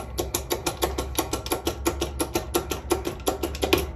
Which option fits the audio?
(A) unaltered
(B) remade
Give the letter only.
A